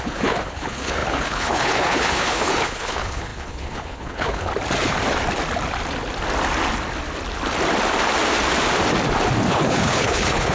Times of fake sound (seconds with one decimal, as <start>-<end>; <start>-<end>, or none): 0.0-4.5; 9.5-10.5